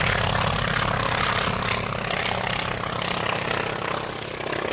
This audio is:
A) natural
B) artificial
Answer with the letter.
A